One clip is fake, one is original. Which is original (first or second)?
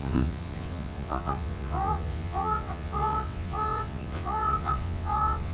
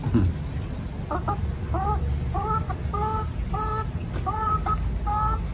second